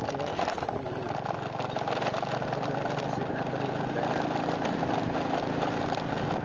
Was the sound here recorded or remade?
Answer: recorded